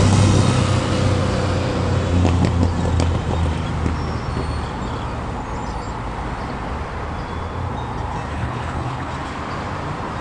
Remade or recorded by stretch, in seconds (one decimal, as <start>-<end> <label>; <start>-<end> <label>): 0.0-8.3 recorded; 8.3-9.1 remade; 9.1-10.2 recorded